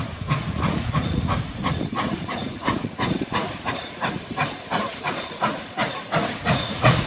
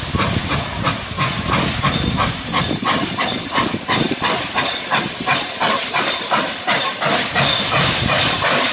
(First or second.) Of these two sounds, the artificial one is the first